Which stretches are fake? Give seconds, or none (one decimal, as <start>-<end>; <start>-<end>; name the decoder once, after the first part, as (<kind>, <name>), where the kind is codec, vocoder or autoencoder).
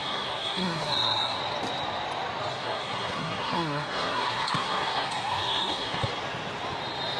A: 0.0-1.4 (codec, SNAC); 2.5-6.1